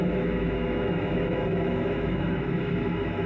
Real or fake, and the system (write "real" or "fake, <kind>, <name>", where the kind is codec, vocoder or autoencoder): fake, autoencoder, DAC-VAE